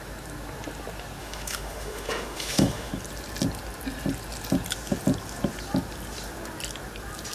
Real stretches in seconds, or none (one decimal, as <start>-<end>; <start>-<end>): 0.0-1.2; 2.9-7.3